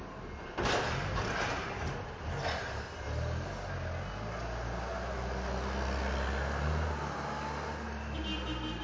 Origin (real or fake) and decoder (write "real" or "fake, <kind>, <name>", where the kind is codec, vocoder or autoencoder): real